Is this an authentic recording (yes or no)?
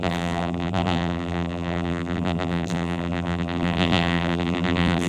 no